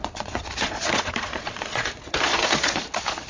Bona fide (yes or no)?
no